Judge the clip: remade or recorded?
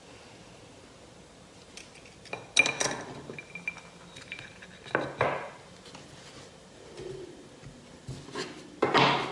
recorded